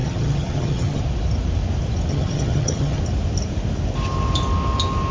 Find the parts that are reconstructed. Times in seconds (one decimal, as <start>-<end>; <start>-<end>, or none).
0.0-1.0; 2.1-3.0